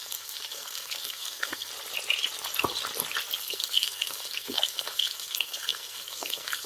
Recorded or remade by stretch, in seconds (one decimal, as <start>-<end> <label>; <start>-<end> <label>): 0.0-1.7 remade; 1.7-3.4 recorded; 3.4-6.7 remade